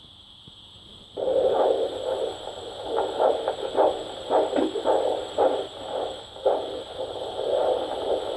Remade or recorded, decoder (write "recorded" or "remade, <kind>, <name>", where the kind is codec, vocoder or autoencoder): recorded